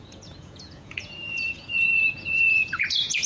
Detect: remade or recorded remade